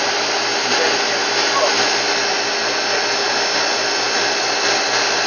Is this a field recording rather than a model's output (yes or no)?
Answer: yes